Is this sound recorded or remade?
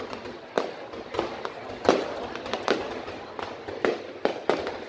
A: recorded